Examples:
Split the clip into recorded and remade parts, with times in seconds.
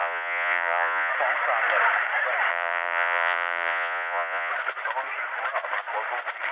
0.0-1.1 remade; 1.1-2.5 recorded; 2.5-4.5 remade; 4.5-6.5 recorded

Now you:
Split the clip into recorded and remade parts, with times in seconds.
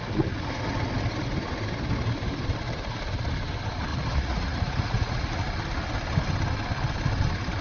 0.0-3.9 recorded; 3.9-5.4 remade; 5.4-7.6 recorded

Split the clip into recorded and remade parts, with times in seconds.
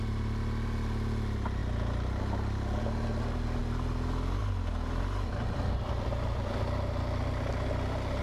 0.0-8.2 recorded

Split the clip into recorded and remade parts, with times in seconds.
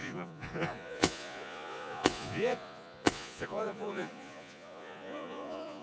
0.0-5.8 remade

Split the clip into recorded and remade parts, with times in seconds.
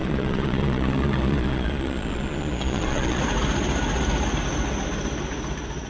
0.0-3.2 remade; 3.2-5.9 recorded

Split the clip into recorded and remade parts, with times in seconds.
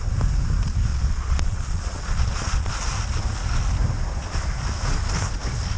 0.0-0.9 recorded; 0.9-2.7 remade; 2.7-5.8 recorded